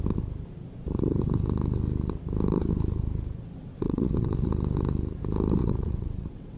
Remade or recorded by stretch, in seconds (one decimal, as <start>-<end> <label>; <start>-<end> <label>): 0.0-3.6 recorded; 3.6-4.5 remade; 4.5-5.6 recorded; 5.6-6.6 remade